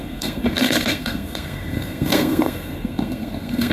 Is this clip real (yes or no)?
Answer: no